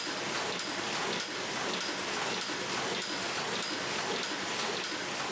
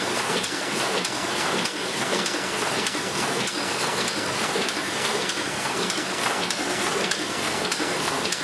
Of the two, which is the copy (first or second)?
second